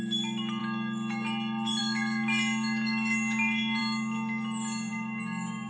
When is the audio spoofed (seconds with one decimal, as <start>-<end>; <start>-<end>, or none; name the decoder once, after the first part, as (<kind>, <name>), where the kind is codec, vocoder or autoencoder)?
none